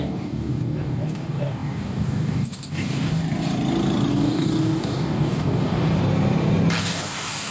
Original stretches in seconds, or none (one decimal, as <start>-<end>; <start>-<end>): 3.2-4.1; 6.0-6.8